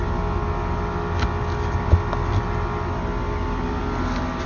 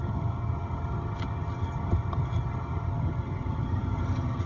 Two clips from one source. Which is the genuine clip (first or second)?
first